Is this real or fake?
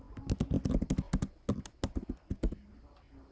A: real